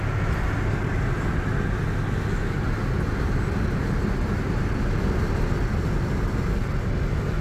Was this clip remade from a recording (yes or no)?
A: no